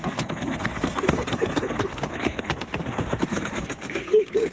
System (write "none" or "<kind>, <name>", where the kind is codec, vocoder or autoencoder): codec, SNAC